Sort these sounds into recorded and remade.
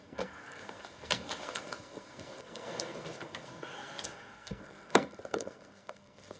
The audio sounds remade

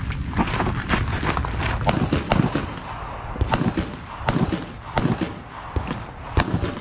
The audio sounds recorded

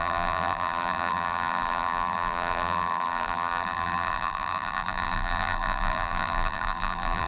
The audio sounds remade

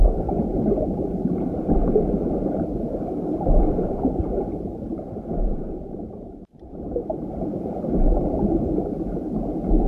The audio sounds remade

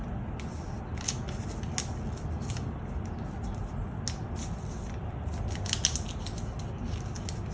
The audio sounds recorded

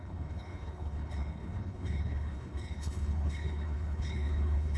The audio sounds remade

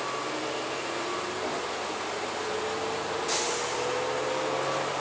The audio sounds recorded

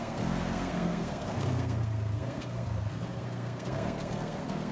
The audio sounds remade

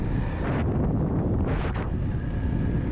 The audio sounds remade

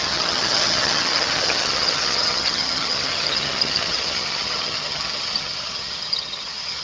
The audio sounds remade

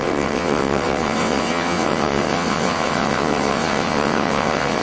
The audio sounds remade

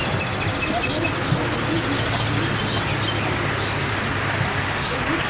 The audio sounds recorded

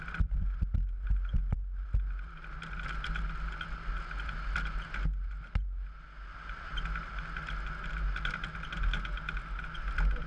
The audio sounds recorded